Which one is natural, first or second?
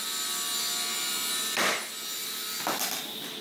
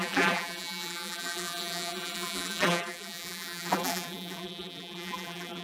first